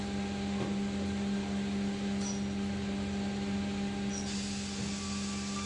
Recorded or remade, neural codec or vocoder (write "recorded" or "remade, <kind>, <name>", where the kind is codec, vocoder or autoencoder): recorded